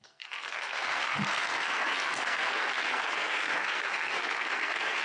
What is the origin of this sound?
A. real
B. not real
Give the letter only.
B